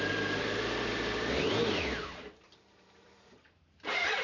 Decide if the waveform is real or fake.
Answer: fake